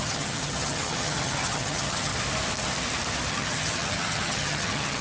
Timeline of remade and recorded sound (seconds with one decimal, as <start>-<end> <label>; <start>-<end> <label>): 0.0-2.1 remade; 2.1-3.3 recorded; 3.3-5.0 remade